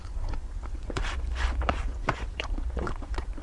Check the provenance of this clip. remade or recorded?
remade